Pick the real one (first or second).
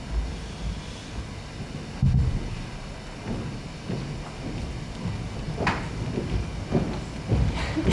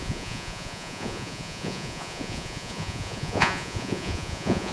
first